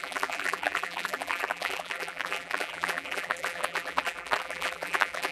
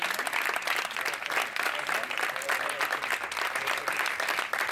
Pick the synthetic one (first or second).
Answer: first